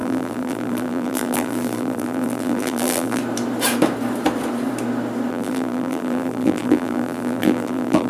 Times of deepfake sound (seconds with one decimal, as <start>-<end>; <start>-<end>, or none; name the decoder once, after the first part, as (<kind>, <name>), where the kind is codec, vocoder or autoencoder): 0.0-3.2 (vocoder, BigVGAN v2); 5.3-8.1

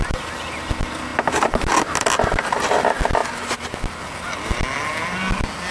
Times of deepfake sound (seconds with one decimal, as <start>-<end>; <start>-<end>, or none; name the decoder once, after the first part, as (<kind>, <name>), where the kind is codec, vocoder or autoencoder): none